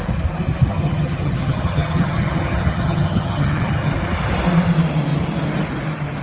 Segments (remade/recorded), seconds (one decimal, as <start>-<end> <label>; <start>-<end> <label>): 0.0-0.7 recorded; 0.7-3.9 remade; 3.9-6.2 recorded